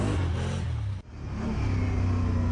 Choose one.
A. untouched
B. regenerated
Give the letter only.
A